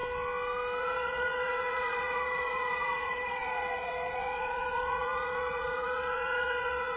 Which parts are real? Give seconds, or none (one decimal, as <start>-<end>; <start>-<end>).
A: 0.0-0.8